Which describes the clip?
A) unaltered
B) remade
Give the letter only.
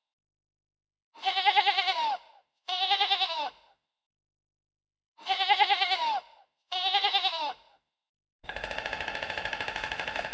B